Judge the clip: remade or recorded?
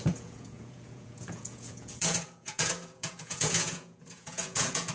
remade